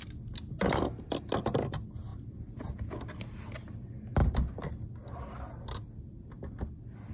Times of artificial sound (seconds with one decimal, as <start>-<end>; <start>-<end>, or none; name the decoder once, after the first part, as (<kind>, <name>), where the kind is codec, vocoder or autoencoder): none